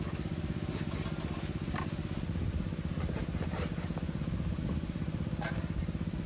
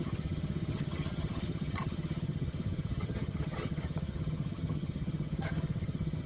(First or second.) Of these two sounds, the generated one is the second